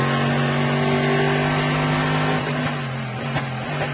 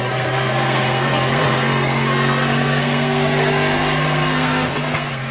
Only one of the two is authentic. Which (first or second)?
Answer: first